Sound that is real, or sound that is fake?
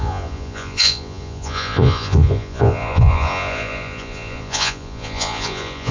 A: fake